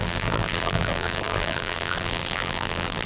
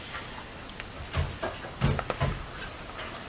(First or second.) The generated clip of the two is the first